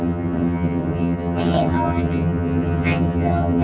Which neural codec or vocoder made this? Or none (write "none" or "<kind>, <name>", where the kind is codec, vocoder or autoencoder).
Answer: vocoder, HiFi-GAN